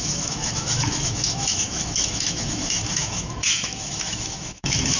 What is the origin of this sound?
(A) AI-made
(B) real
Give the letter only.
A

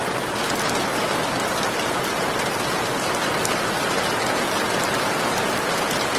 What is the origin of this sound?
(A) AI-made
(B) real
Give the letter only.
B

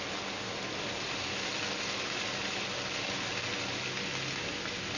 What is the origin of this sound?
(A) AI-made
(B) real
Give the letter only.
B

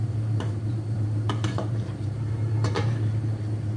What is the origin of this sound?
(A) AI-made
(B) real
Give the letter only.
A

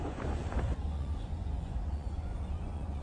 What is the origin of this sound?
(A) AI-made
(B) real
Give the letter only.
A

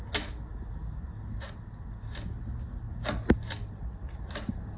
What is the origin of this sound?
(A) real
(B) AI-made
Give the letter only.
A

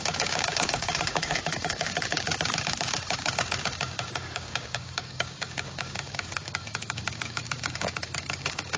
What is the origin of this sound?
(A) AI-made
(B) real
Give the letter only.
A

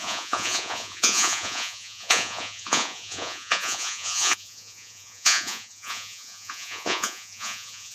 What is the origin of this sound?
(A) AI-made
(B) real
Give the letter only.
A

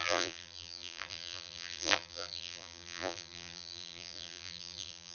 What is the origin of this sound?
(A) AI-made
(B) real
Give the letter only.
A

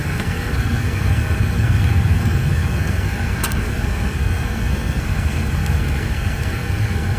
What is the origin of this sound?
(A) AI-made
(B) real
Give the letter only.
A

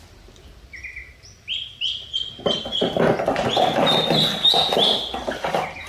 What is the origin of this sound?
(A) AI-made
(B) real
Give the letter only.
B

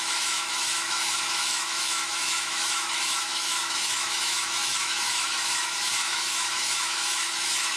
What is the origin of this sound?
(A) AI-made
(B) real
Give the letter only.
A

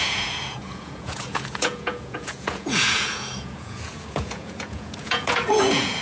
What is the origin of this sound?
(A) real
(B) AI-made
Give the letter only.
B